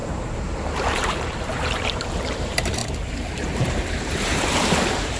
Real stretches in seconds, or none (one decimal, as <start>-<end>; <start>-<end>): 2.8-3.9